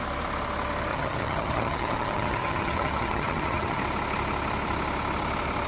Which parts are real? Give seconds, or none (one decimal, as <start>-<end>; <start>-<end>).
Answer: 0.0-0.9; 3.8-5.7